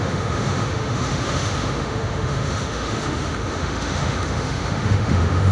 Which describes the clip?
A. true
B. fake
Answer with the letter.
B